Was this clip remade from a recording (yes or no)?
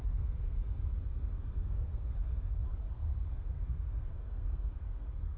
yes